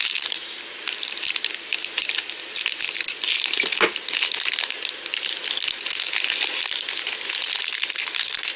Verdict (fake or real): real